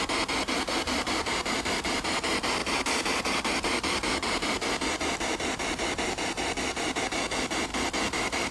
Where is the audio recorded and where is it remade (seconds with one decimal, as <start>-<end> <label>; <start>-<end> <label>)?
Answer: 0.0-8.5 recorded